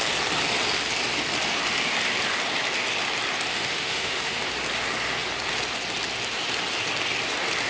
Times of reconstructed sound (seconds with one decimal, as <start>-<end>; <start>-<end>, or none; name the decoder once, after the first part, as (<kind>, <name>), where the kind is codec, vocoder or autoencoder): 3.5-4.4 (autoencoder, DAC-VAE)